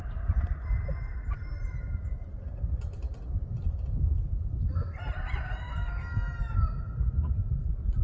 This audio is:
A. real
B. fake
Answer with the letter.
A